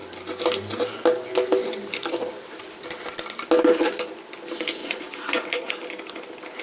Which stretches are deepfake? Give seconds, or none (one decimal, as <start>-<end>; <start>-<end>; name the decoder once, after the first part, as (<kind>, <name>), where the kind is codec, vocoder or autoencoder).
4.8-5.7 (vocoder, Vocos)